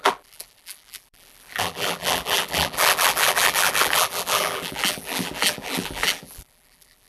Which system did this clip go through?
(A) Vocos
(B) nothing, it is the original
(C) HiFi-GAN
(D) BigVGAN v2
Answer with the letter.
D